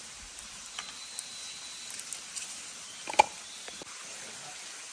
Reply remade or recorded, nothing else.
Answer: recorded